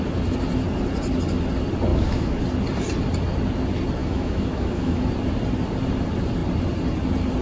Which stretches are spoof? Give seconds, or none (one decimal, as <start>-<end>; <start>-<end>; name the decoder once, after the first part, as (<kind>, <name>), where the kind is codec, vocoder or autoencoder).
1.9-2.4 (autoencoder, DAC-VAE); 4.0-5.0